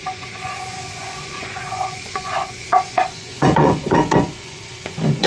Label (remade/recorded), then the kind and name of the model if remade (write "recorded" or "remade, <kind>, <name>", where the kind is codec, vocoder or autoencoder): remade, vocoder, Vocos